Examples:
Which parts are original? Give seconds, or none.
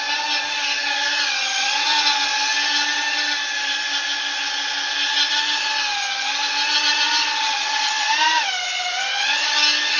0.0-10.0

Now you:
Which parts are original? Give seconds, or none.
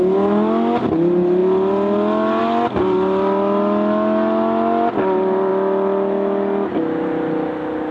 0.0-7.9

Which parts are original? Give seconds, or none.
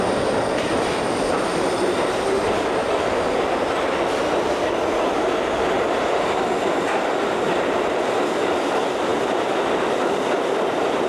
0.0-11.1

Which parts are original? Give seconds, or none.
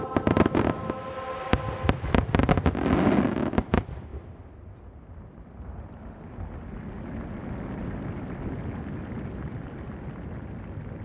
0.0-11.0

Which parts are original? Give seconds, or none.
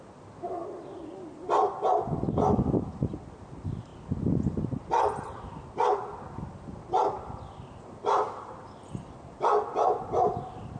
0.0-10.8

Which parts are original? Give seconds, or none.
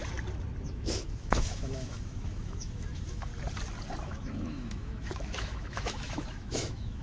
0.0-0.6; 3.3-4.0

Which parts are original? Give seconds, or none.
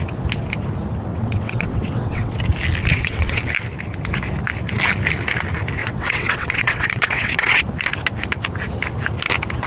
0.0-1.1; 2.4-2.9; 3.4-5.8; 7.6-9.7